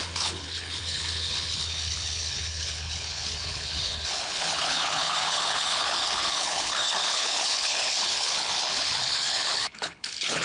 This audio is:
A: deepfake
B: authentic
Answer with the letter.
A